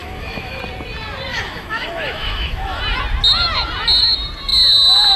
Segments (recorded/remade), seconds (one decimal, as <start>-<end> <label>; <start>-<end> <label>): 0.0-0.6 remade; 0.6-1.3 recorded; 1.3-2.8 remade; 2.8-5.2 recorded